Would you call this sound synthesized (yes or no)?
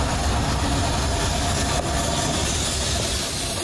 no